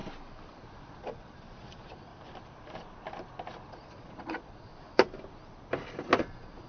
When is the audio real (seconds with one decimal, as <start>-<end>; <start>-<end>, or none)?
0.0-0.7; 2.1-3.7; 4.7-6.2